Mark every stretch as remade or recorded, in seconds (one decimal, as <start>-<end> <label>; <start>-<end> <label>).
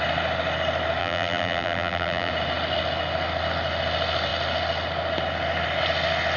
0.0-1.0 recorded; 1.0-2.3 remade; 2.3-6.4 recorded